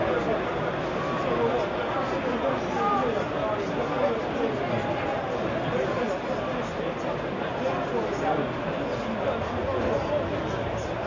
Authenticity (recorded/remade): recorded